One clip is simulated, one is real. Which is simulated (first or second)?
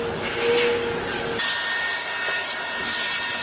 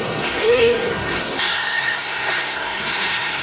second